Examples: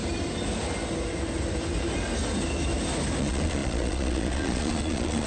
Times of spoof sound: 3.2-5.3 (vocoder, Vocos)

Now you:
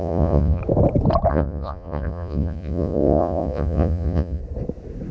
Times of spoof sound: 0.0-0.6 (vocoder, Vocos); 1.3-4.4